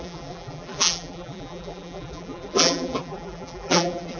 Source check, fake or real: fake